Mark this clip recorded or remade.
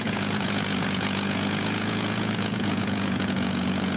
remade